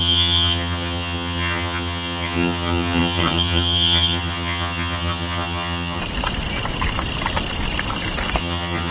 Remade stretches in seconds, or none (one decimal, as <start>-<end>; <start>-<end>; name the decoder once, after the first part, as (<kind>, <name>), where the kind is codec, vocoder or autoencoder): 0.0-6.0 (vocoder, HiFi-GAN); 8.4-8.9